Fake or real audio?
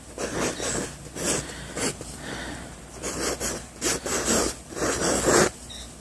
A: real